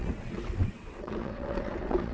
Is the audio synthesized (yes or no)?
yes